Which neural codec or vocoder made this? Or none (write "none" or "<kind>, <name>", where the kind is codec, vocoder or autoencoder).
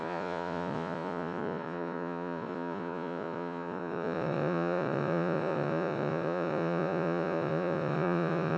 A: vocoder, Vocos